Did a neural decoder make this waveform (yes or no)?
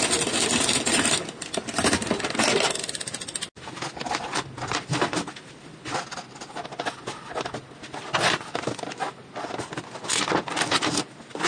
no